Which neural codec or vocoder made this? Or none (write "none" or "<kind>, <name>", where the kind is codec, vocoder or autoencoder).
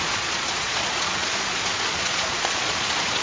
vocoder, Vocos